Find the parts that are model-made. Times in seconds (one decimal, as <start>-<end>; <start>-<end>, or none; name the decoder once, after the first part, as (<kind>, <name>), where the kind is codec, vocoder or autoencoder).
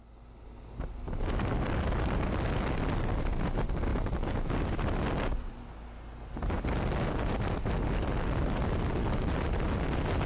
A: none